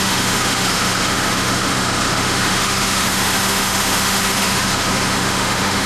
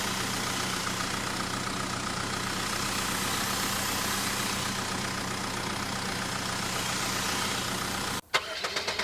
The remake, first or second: first